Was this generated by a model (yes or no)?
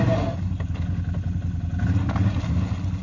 no